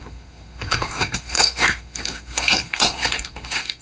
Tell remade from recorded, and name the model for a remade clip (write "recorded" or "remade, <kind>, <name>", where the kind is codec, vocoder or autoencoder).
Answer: remade, codec, SNAC